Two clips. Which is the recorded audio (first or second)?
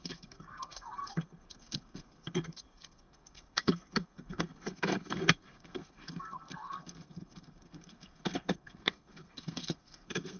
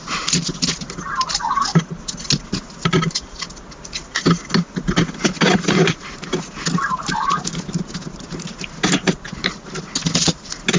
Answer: second